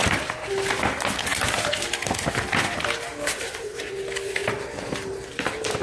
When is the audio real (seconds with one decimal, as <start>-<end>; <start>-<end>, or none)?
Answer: 0.5-4.4; 5.1-5.8